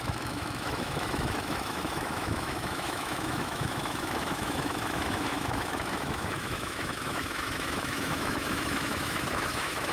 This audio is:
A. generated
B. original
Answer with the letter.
A